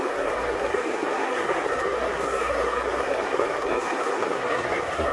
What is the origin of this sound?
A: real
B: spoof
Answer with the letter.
B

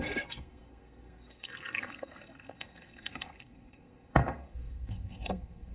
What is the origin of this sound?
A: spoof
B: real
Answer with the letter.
A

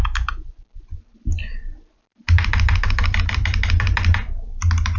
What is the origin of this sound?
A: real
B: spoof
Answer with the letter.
B